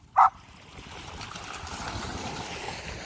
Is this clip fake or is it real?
real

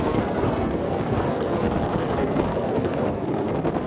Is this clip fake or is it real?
fake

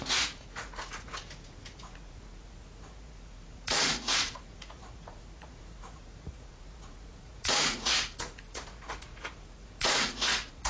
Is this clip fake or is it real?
fake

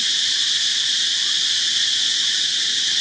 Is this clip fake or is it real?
real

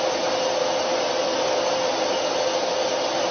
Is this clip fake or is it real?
real